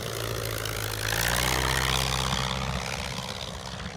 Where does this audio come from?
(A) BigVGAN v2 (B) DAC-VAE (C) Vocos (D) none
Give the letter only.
D